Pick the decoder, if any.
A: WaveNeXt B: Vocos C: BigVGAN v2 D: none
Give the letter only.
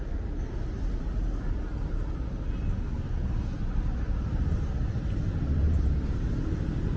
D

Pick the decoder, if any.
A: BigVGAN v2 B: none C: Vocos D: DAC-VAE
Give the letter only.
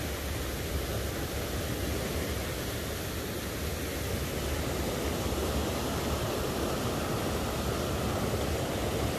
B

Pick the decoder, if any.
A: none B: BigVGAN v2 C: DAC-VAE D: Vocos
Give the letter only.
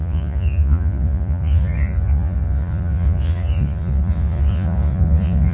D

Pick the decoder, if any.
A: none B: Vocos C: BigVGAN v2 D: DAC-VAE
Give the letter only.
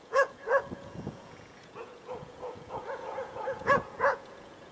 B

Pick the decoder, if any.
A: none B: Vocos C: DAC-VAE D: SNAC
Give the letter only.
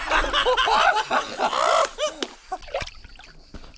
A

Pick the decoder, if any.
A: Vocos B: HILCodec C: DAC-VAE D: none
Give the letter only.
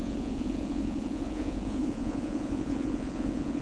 A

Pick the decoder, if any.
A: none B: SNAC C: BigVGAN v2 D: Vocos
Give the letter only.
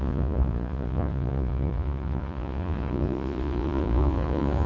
D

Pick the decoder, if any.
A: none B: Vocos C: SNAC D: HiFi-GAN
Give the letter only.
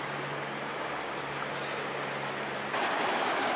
A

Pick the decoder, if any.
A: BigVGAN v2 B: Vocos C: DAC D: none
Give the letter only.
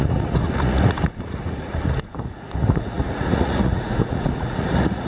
B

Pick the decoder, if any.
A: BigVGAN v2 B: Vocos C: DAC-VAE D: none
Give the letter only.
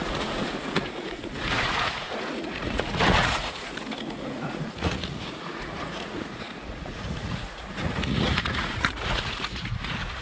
B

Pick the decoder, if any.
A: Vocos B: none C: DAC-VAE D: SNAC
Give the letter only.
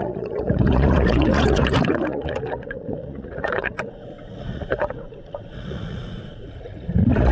A